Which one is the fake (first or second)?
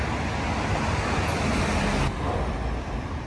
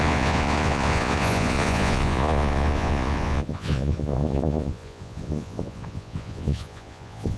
second